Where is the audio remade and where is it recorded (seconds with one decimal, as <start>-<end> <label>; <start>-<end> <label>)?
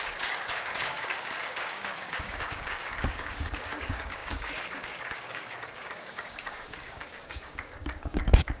0.0-8.6 remade